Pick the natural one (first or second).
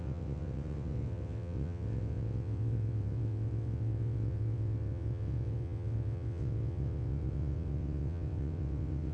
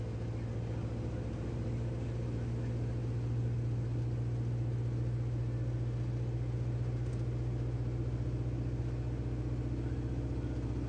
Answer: second